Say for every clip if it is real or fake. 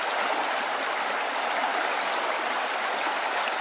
real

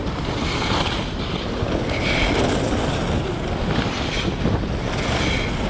real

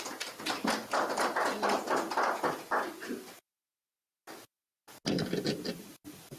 real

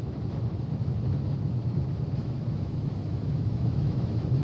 fake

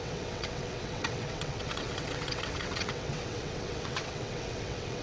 fake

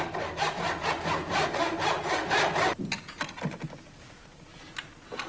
real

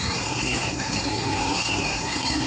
fake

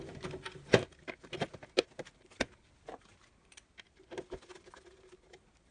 real